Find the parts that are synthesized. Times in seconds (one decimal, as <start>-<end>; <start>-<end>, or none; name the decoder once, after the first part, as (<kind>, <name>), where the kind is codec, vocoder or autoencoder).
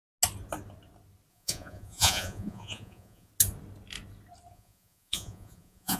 1.3-3.3 (vocoder, Vocos); 4.5-6.0